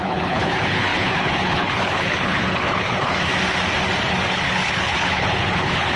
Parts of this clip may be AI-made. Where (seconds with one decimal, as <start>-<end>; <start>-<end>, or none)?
0.0-3.3; 4.3-6.0